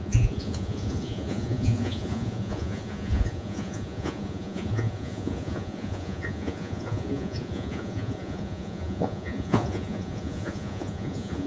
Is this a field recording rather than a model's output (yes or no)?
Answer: no